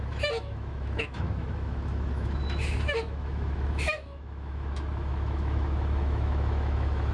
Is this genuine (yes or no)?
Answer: no